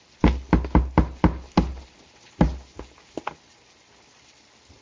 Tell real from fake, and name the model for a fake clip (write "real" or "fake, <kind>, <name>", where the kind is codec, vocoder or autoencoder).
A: real